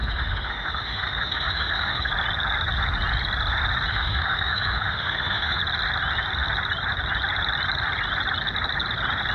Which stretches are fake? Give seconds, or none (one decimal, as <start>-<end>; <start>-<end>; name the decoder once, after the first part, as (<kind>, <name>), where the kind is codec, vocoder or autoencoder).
0.0-2.1 (autoencoder, DAC-VAE); 3.9-5.6